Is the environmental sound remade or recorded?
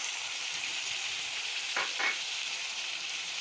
remade